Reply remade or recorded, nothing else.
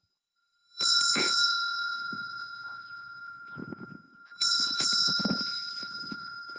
remade